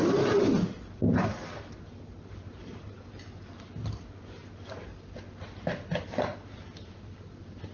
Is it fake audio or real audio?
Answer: real